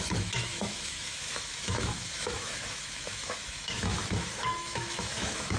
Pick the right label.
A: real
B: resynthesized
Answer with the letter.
B